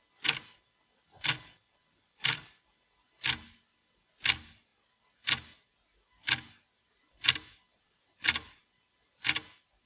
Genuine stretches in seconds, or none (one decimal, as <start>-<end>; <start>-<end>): 0.0-9.9